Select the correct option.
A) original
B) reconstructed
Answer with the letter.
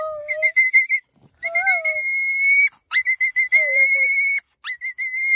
A